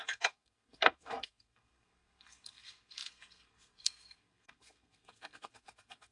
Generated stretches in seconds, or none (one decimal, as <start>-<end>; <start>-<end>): 0.0-6.1